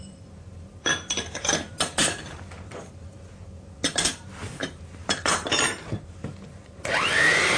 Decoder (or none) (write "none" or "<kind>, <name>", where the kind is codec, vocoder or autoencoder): vocoder, BigVGAN v2